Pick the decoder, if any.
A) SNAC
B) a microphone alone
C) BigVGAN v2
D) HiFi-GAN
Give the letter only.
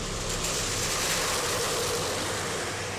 C